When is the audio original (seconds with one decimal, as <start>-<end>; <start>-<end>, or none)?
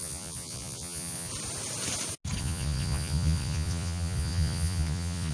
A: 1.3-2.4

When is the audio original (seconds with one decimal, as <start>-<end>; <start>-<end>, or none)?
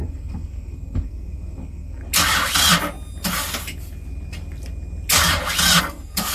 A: 2.0-5.8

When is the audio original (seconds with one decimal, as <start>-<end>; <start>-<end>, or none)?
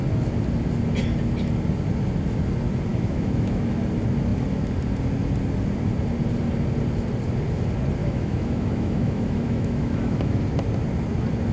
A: 0.0-2.9; 3.6-8.0; 10.4-11.5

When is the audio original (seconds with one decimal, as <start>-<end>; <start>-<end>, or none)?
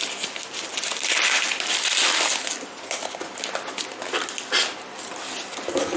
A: 0.0-6.0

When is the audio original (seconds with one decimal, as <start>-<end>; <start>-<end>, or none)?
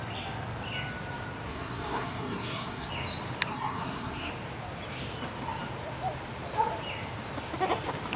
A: 0.0-1.5; 2.9-3.5; 4.3-8.2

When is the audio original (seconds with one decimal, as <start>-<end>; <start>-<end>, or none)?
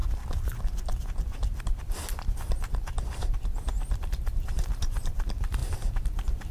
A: 0.0-1.6